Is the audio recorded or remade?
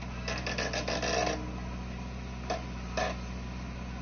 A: recorded